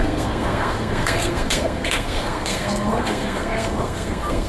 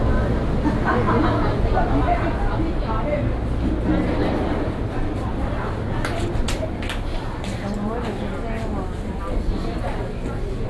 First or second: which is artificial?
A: first